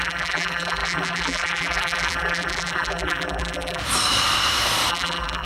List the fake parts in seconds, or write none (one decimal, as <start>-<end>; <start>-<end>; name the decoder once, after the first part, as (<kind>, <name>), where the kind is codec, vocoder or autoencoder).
0.0-3.8 (vocoder, BigVGAN v2); 4.9-5.4